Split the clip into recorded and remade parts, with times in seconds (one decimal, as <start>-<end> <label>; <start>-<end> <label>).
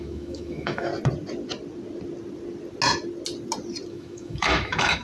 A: 0.0-0.9 remade; 0.9-3.9 recorded; 3.9-5.0 remade